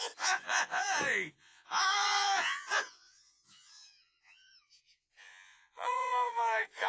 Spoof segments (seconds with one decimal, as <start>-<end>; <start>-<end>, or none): 0.0-6.9